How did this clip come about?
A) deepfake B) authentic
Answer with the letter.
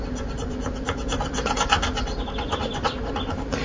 B